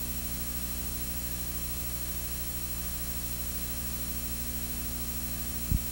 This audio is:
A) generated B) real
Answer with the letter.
B